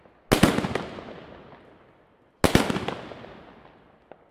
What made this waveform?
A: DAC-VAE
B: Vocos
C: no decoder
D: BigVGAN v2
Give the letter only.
C